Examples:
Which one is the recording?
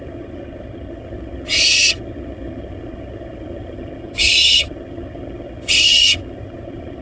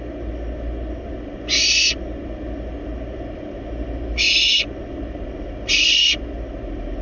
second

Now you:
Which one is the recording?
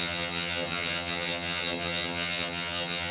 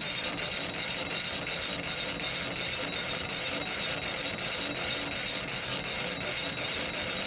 second